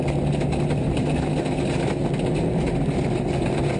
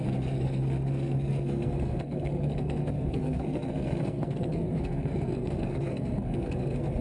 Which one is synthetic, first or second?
second